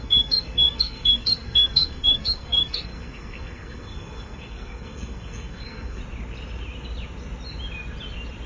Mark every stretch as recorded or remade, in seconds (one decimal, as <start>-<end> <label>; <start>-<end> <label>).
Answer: 0.0-6.0 remade; 6.0-8.5 recorded

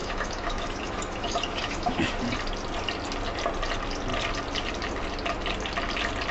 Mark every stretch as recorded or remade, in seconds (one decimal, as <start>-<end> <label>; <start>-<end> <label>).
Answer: 0.0-2.2 remade; 2.2-6.3 recorded

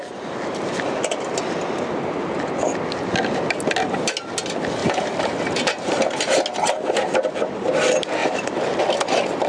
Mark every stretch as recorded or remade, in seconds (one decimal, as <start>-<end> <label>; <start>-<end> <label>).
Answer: 0.0-4.8 recorded; 4.8-6.4 remade; 6.4-8.2 recorded; 8.2-8.8 remade; 8.8-9.5 recorded

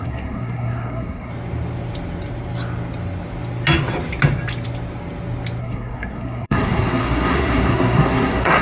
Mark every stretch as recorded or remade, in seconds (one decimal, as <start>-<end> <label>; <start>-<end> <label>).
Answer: 0.0-1.3 remade; 1.3-5.6 recorded; 5.6-8.6 remade

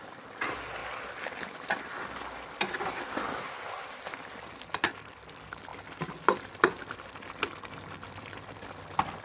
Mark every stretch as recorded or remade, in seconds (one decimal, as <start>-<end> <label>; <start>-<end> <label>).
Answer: 0.0-9.2 recorded